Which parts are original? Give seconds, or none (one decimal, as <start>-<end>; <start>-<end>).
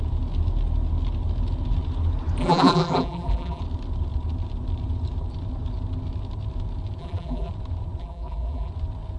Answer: 0.0-2.4; 3.6-7.0; 7.5-8.0; 8.7-9.2